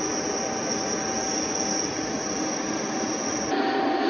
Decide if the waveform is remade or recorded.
recorded